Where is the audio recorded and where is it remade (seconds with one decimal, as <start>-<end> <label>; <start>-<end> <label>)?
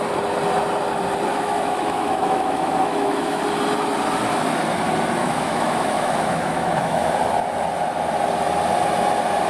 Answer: 0.0-1.3 recorded; 1.3-3.4 remade; 3.4-5.2 recorded; 5.2-7.1 remade; 7.1-9.5 recorded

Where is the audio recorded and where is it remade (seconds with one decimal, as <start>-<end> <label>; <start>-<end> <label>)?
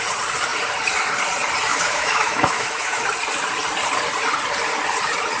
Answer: 0.0-1.7 recorded; 1.7-3.0 remade; 3.0-5.4 recorded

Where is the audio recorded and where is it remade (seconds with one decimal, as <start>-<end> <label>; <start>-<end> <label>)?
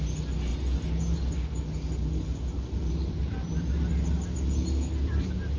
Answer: 0.0-5.6 recorded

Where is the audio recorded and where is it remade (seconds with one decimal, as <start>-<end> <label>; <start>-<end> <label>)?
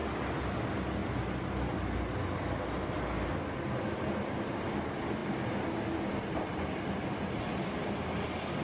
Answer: 0.0-8.6 recorded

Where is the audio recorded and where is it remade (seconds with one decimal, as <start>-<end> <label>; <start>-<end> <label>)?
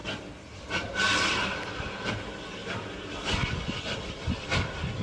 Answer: 0.0-2.1 remade; 2.1-5.0 recorded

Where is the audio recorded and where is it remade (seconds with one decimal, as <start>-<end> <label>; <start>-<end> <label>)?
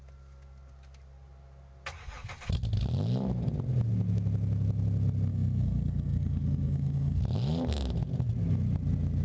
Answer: 0.0-5.3 recorded; 5.3-7.2 remade; 7.2-9.2 recorded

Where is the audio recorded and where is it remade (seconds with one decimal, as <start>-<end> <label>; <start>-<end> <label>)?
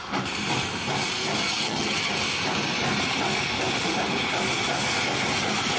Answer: 0.0-1.4 recorded; 1.4-2.1 remade; 2.1-5.8 recorded